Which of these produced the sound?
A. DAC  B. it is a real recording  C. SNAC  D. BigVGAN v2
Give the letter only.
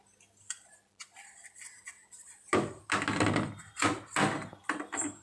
B